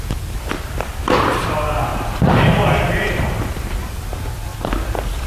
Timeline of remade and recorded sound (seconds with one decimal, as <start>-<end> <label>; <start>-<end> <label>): 0.0-1.9 remade; 1.9-3.5 recorded; 3.5-4.5 remade; 4.5-5.3 recorded